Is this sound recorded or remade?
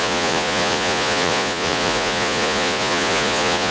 remade